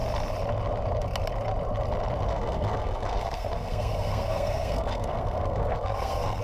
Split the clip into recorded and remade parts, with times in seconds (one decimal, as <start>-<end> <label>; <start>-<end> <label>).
0.0-2.3 recorded; 2.3-6.4 remade